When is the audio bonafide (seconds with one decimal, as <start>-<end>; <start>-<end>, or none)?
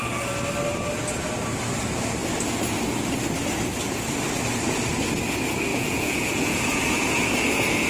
0.0-5.7